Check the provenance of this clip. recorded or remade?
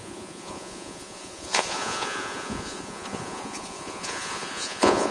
remade